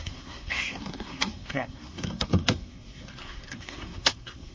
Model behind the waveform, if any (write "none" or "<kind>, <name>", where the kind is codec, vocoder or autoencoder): codec, SNAC